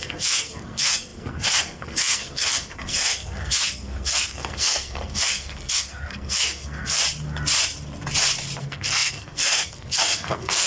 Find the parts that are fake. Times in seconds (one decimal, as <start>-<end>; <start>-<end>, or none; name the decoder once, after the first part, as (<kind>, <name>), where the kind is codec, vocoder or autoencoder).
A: 0.0-7.0 (codec, SNAC); 8.6-10.7